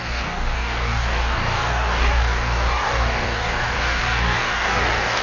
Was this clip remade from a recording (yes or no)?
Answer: yes